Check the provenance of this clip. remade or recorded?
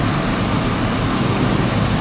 recorded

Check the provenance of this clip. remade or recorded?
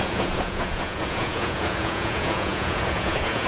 remade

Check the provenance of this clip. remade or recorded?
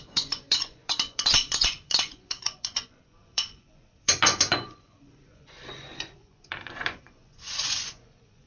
remade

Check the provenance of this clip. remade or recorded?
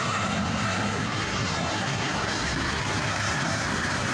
remade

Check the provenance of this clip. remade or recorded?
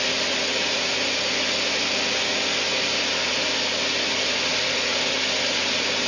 recorded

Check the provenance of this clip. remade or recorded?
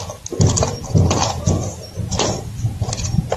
recorded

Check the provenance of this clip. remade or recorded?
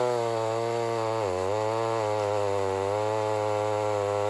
recorded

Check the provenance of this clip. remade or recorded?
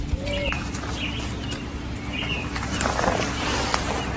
recorded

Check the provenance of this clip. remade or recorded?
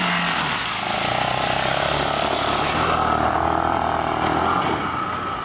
recorded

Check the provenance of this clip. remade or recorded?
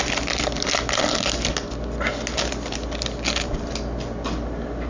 recorded